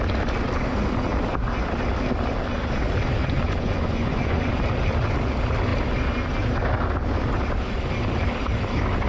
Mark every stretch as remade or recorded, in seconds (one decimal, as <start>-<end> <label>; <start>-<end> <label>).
0.0-3.2 recorded; 3.2-4.5 remade; 4.5-9.1 recorded